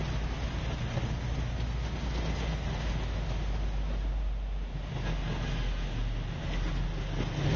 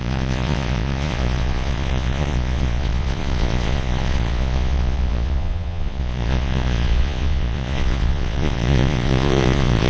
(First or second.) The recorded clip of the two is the first